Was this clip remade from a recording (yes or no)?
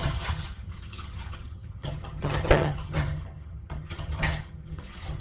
yes